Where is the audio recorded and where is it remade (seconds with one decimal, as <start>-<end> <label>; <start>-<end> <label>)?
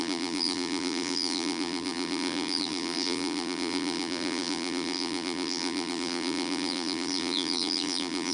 0.0-8.3 remade